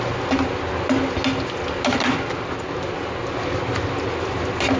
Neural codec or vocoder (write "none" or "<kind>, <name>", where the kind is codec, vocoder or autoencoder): none